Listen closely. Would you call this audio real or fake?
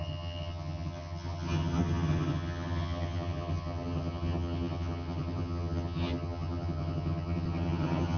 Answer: fake